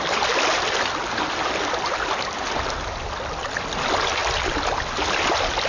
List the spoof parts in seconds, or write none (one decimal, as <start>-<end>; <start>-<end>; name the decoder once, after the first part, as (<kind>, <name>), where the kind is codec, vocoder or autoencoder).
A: none